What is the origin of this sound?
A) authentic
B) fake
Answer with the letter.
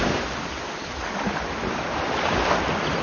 A